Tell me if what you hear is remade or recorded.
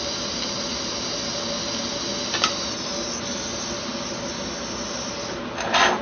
recorded